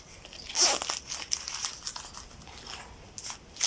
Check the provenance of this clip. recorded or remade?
recorded